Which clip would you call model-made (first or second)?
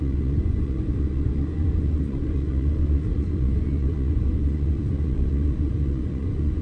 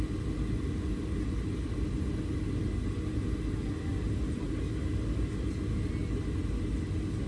first